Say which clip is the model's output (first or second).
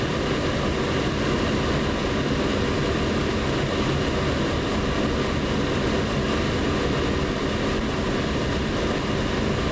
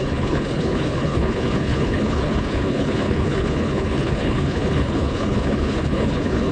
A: second